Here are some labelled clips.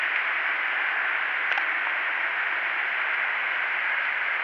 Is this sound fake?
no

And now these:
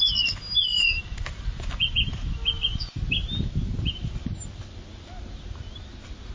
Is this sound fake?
no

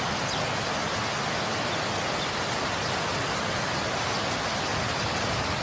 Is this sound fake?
no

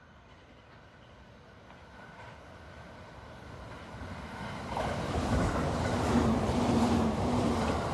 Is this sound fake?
no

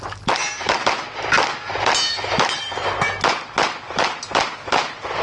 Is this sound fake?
no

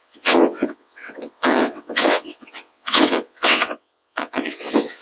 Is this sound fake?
yes